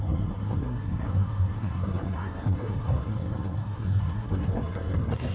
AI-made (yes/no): yes